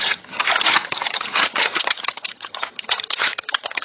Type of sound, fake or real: fake